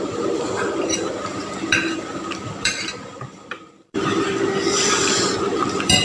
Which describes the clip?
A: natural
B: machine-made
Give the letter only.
B